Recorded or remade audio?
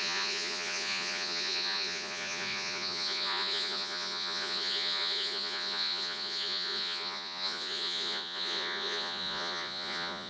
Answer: remade